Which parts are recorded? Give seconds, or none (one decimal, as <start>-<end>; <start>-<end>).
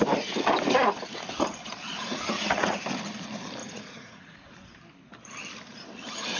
0.0-1.9; 2.8-3.6; 4.5-6.4